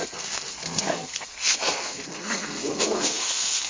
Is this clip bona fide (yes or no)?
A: no